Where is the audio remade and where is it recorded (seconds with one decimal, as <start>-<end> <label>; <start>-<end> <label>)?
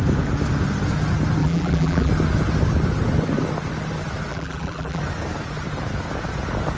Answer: 0.0-1.4 recorded; 1.4-2.1 remade; 2.1-4.3 recorded; 4.3-5.0 remade; 5.0-6.8 recorded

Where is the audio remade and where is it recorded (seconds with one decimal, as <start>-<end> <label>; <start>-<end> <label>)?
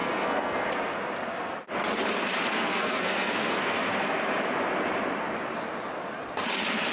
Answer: 0.0-0.7 remade; 0.7-2.5 recorded; 2.5-3.9 remade; 3.9-6.9 recorded